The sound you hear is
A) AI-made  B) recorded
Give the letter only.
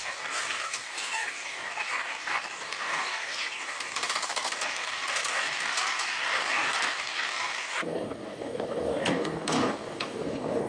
A